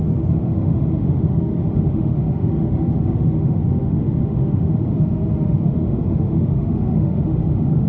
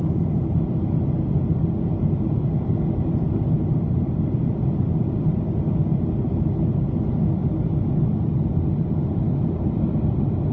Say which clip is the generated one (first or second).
first